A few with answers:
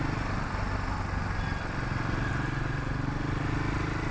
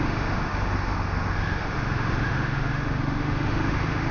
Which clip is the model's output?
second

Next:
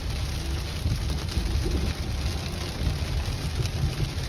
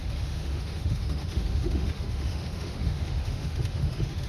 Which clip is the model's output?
second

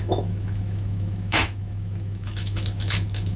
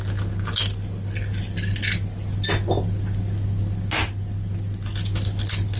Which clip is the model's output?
first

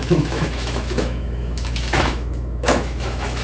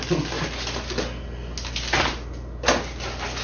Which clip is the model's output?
first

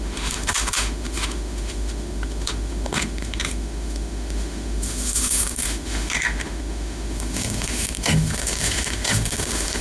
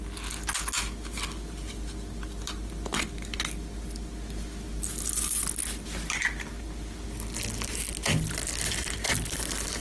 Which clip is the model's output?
first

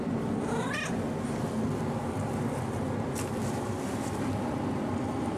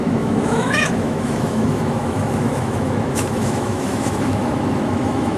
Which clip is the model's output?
second